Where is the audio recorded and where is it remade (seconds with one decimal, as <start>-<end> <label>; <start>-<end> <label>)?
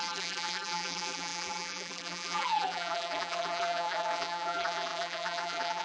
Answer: 0.0-5.8 remade